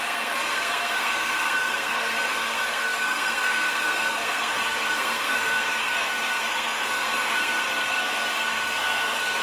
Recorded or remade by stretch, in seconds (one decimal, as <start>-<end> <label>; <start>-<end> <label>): 0.0-9.4 remade